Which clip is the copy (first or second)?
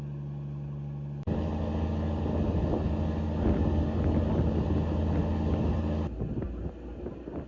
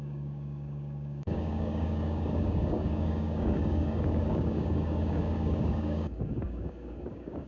second